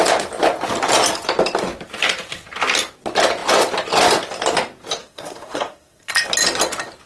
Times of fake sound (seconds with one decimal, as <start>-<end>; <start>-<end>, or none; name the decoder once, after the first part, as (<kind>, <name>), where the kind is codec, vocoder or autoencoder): 5.0-6.1 (codec, SNAC)